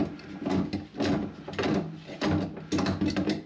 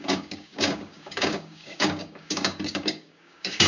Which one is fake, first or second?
second